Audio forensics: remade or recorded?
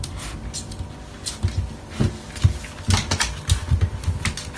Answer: recorded